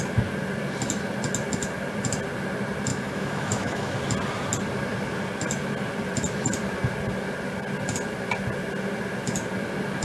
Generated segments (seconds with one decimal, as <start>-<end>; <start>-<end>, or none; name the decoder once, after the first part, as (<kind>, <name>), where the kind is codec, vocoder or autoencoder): 2.9-3.9 (autoencoder, DAC-VAE)